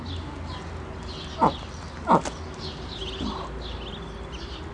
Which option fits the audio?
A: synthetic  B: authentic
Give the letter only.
B